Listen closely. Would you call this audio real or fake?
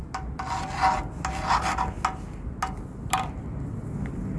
real